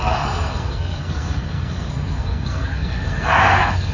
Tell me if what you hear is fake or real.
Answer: fake